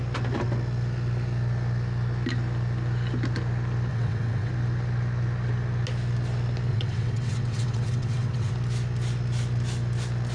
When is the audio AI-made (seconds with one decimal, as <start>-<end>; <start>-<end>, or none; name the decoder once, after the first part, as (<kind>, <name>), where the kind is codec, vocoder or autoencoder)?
3.9-4.5 (vocoder, WaveNeXt); 6.7-8.5